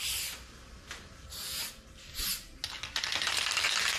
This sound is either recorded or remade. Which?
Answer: recorded